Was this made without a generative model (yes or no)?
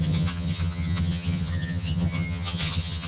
no